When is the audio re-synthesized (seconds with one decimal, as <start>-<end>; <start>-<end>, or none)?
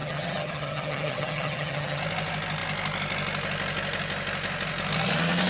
0.0-2.0